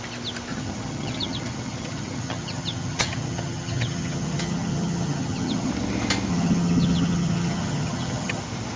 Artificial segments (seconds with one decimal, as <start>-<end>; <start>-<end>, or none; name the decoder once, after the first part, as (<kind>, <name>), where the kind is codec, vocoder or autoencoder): 0.5-5.7 (vocoder, HiFi-GAN); 6.3-8.4

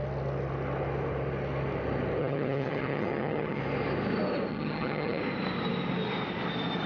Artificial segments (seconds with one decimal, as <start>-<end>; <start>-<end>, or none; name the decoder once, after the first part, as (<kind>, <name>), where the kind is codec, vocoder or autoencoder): 2.2-3.6 (vocoder, HiFi-GAN); 4.5-5.2

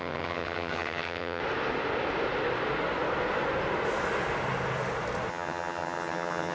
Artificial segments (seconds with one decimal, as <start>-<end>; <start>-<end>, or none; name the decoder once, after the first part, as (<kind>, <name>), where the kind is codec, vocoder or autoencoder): 0.0-1.4 (vocoder, HiFi-GAN); 5.3-6.5

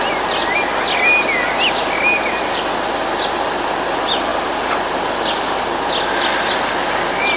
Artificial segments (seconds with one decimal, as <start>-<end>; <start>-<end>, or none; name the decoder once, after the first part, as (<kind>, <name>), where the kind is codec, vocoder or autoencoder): none

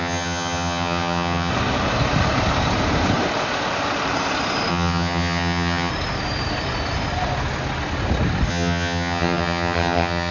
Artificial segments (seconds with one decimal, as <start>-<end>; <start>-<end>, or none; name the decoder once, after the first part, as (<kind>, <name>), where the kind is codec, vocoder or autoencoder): 0.0-1.5 (vocoder, HiFi-GAN); 4.7-5.9; 8.5-10.3